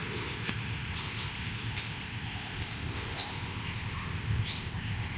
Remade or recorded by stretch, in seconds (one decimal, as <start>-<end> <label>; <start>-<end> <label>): 0.0-5.2 remade